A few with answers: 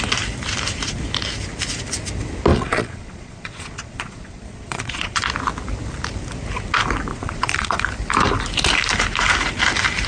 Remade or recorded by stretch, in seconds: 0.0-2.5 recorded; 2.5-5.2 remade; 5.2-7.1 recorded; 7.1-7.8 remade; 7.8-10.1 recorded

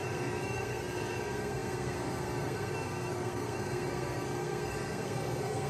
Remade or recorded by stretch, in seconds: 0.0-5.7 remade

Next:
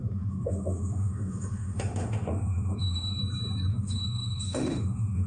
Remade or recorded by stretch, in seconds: 0.0-3.2 remade; 3.2-3.7 recorded; 3.7-5.3 remade